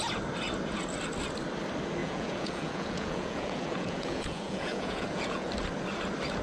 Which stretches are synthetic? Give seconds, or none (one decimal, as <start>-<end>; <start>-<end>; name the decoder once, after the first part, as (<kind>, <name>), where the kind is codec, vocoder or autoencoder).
2.0-5.5 (vocoder, Vocos)